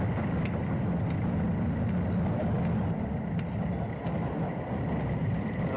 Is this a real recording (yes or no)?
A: yes